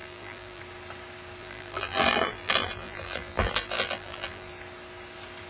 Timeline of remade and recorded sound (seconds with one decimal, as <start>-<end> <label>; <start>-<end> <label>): 0.0-0.6 remade; 0.6-1.4 recorded; 1.4-4.5 remade; 4.5-5.5 recorded